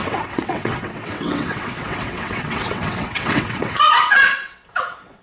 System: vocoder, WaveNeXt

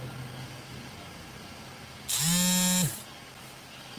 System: none